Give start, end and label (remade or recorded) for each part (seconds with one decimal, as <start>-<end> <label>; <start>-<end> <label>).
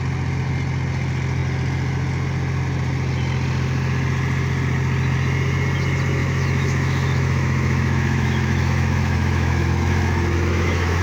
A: 0.0-6.2 recorded; 6.2-11.0 remade